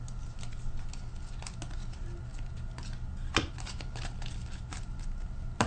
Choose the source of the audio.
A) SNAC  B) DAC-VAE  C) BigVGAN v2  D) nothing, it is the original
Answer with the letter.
D